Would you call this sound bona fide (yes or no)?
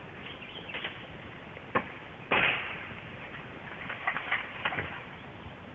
yes